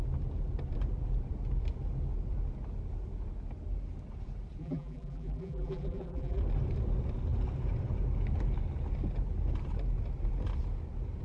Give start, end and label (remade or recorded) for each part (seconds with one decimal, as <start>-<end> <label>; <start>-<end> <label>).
0.0-4.6 recorded; 4.6-6.4 remade; 6.4-11.2 recorded